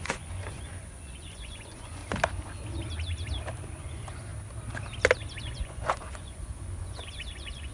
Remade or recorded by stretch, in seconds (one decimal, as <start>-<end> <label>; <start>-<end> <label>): 0.0-2.0 remade; 2.0-3.8 recorded; 3.8-4.3 remade; 4.3-5.4 recorded; 5.4-7.7 remade